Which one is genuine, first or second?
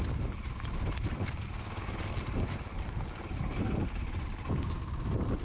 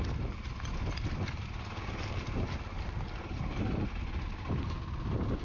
second